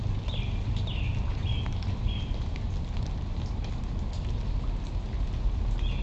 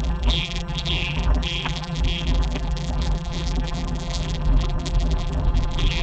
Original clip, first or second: first